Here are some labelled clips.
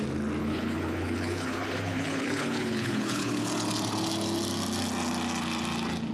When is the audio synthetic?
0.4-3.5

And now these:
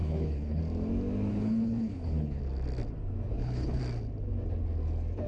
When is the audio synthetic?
0.0-0.6; 1.3-2.4; 3.3-3.8

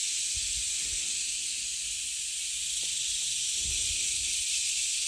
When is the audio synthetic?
none

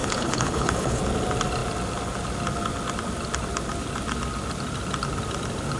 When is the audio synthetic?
0.0-1.0

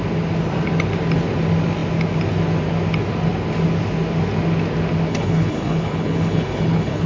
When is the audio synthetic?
5.1-7.1